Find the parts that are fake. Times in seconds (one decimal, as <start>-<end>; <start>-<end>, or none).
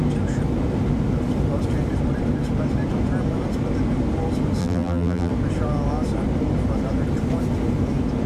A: 4.6-5.3